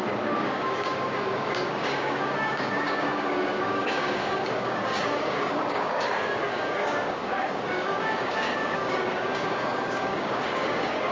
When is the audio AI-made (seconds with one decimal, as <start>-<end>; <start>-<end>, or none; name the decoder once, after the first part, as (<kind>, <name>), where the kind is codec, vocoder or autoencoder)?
0.0-11.1 (codec, DAC)